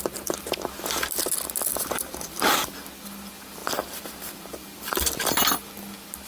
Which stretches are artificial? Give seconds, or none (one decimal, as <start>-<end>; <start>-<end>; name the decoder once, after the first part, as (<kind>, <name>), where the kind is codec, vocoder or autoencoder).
1.7-2.7 (vocoder, BigVGAN v2); 3.6-5.1